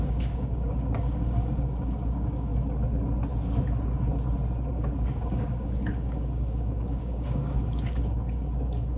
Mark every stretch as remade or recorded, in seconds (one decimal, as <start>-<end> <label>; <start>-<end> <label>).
0.0-2.5 remade; 2.5-4.7 recorded; 4.7-9.0 remade